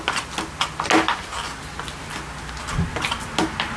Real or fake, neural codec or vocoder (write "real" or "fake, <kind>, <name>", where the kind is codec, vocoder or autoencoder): real